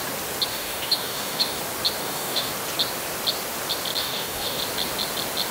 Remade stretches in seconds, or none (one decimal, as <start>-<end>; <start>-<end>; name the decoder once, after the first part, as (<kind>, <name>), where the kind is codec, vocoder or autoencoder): 0.5-1.6 (codec, DAC); 2.0-2.5; 4.0-4.6

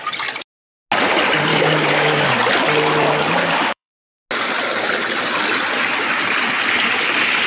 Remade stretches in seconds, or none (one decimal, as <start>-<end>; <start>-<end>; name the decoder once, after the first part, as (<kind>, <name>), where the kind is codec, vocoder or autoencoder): 1.5-2.4 (codec, DAC); 3.4-4.2